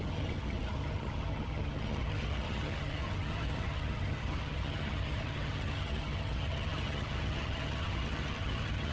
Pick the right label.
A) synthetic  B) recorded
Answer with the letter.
A